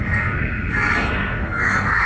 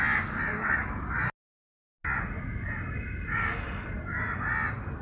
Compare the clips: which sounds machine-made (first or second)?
first